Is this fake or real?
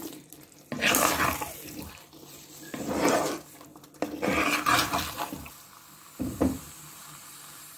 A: fake